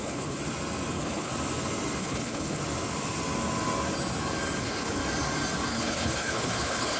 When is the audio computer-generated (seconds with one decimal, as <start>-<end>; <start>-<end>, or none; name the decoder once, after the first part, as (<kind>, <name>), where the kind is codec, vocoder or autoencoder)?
0.0-0.4 (codec, HILCodec); 0.9-1.3; 2.0-2.6; 4.6-5.0; 5.7-7.0